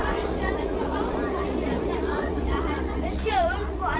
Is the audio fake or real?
fake